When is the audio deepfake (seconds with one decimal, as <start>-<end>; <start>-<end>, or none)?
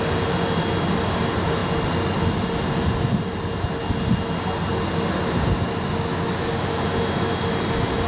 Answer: none